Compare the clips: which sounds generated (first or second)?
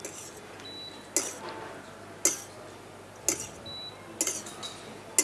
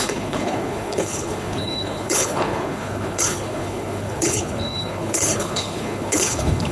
second